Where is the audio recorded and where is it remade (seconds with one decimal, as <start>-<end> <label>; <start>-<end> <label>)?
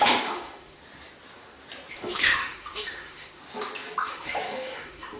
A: 0.0-0.8 remade; 0.8-1.9 recorded; 1.9-3.4 remade; 3.4-4.1 recorded; 4.1-5.2 remade